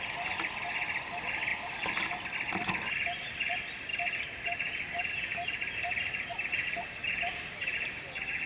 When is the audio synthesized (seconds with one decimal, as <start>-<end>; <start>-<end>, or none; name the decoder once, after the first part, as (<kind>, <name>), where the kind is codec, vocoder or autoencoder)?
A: 0.0-1.5 (vocoder, BigVGAN v2); 3.5-8.5